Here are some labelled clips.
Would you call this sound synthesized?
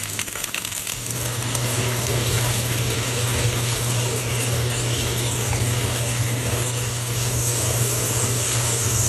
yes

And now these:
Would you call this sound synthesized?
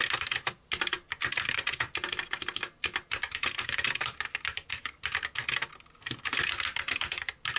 no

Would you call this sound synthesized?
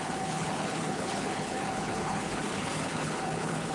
yes